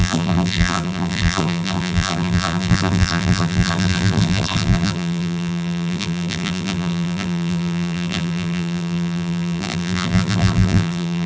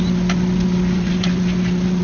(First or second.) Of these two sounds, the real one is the second